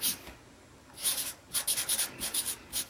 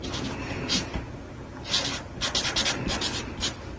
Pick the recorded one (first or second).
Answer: second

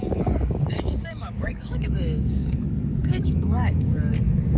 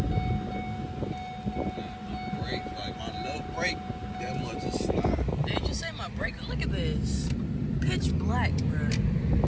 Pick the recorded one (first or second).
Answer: second